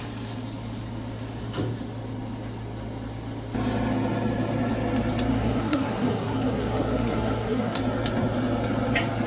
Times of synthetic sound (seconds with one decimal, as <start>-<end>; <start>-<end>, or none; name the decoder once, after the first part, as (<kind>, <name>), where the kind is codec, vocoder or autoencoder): 5.3-7.8 (codec, SNAC)